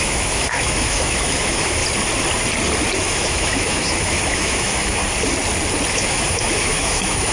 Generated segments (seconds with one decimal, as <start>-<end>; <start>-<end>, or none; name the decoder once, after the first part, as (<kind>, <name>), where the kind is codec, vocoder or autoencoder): 0.0-1.8 (autoencoder, DAC-VAE); 2.9-5.0; 5.9-7.3

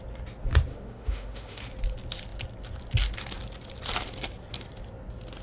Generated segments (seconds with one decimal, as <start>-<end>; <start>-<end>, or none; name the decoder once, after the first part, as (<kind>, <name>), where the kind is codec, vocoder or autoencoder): 0.7-1.6 (autoencoder, DAC-VAE)

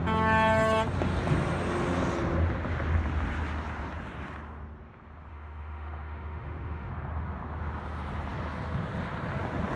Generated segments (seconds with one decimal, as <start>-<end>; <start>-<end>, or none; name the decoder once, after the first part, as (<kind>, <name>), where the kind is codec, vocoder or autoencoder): 5.3-6.9 (autoencoder, DAC-VAE)

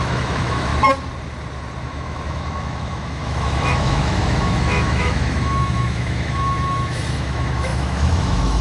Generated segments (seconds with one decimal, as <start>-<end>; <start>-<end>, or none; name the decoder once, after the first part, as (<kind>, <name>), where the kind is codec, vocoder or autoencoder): 0.0-0.7 (autoencoder, DAC-VAE); 1.8-8.6

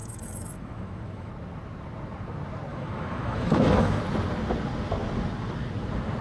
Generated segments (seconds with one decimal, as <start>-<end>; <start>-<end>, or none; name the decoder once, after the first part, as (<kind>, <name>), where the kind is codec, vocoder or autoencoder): 0.0-1.3 (autoencoder, DAC-VAE); 2.7-4.0